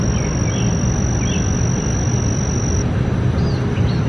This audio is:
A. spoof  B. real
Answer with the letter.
B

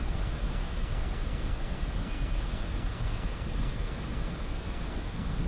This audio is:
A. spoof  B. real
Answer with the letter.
A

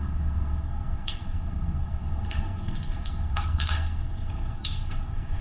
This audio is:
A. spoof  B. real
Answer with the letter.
A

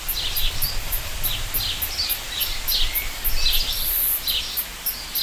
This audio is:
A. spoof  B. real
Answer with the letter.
B